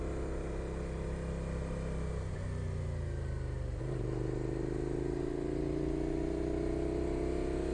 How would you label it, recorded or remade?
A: recorded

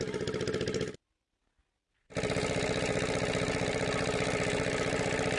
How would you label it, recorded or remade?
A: recorded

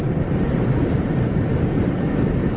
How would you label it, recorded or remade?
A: remade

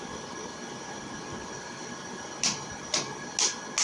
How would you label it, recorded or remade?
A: recorded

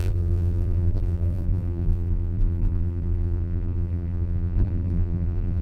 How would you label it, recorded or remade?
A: remade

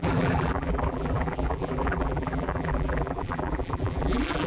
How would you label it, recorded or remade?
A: remade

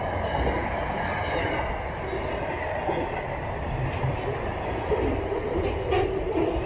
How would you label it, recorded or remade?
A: recorded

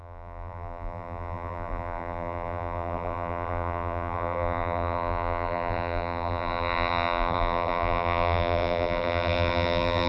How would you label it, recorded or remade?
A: remade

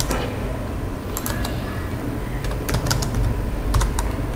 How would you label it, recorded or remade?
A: remade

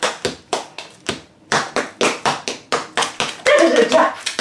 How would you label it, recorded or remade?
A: recorded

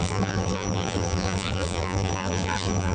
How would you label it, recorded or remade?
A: remade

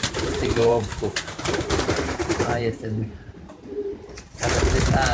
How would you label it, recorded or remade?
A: remade